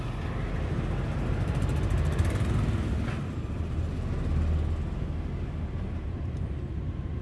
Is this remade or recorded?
recorded